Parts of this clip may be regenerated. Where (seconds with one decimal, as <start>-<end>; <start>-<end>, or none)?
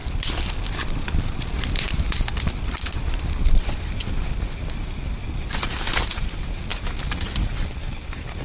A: none